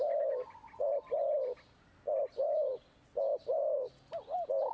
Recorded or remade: recorded